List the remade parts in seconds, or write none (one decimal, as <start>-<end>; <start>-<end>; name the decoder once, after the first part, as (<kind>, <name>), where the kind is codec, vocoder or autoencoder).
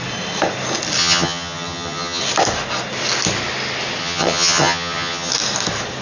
1.0-2.2 (vocoder, HiFi-GAN); 4.0-5.3